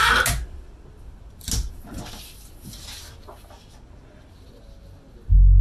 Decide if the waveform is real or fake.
real